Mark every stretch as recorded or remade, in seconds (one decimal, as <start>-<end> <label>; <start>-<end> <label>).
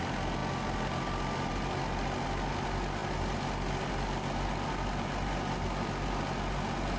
0.0-7.0 recorded